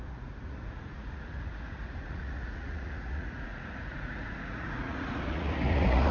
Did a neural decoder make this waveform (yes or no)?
yes